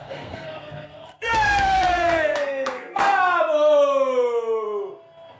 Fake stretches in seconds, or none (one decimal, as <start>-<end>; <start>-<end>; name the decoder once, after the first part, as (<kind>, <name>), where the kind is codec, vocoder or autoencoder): 0.0-3.0 (codec, SNAC)